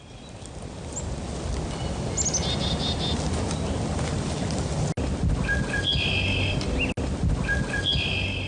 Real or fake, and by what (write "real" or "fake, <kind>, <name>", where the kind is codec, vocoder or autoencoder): real